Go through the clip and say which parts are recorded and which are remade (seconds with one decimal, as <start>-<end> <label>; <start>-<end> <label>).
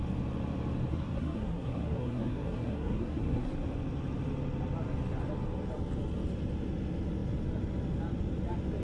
0.0-0.9 recorded; 0.9-3.5 remade; 3.5-8.8 recorded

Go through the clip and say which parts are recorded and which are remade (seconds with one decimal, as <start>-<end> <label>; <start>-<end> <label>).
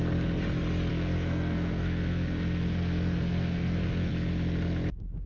0.0-0.9 recorded; 0.9-4.1 remade; 4.1-5.3 recorded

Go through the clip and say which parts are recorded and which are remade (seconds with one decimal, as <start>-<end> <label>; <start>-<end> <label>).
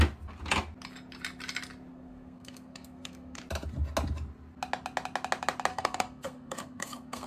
0.0-1.9 recorded; 1.9-3.4 remade; 3.4-5.7 recorded; 5.7-7.3 remade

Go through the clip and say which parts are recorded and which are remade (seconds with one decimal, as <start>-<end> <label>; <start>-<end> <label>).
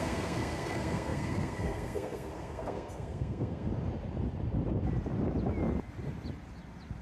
0.0-3.7 remade; 3.7-7.0 recorded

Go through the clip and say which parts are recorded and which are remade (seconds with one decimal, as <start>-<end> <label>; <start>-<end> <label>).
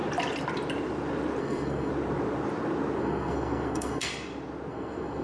0.0-1.4 recorded; 1.4-1.9 remade; 1.9-3.0 recorded; 3.0-4.1 remade; 4.1-4.7 recorded; 4.7-5.2 remade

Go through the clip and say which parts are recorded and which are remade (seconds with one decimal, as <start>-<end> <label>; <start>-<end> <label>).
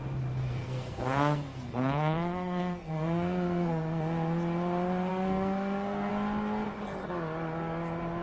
0.0-0.4 recorded; 0.4-4.0 remade; 4.0-5.1 recorded; 5.1-6.1 remade; 6.1-8.2 recorded